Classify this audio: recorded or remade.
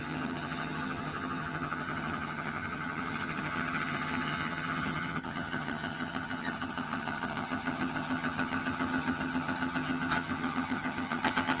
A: remade